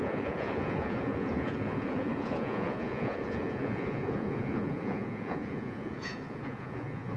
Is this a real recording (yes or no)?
no